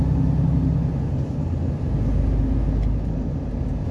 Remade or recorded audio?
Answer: recorded